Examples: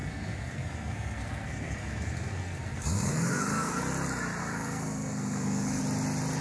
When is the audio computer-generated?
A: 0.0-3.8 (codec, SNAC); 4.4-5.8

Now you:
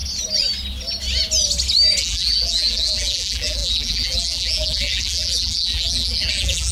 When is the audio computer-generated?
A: 2.0-6.7 (vocoder, BigVGAN v2)

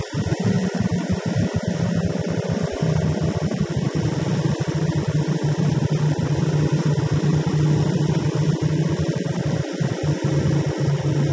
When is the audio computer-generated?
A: none

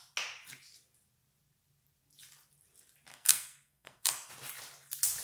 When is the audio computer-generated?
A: 3.1-4.3 (codec, SNAC)

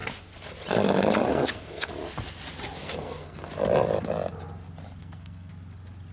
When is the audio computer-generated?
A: 1.3-1.9 (codec, SNAC); 2.8-3.5; 5.0-5.5

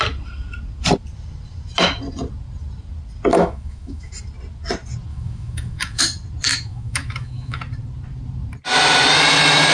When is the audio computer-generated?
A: 3.3-4.1 (autoencoder, DAC-VAE); 5.1-6.0; 6.5-7.6